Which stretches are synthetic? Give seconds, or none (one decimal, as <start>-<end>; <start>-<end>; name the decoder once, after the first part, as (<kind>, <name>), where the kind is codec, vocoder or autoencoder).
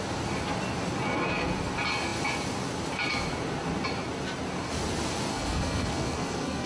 5.3-6.7 (codec, SNAC)